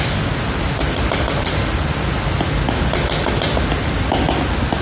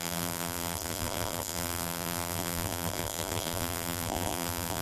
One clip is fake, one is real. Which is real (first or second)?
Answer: first